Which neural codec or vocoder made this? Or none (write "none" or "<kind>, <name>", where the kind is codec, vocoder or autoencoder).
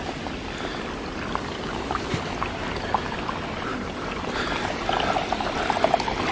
none